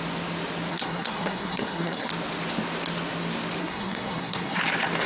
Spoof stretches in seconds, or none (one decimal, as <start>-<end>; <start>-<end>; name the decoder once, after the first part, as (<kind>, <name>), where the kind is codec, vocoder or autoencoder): 0.7-2.1 (codec, SNAC); 3.6-4.6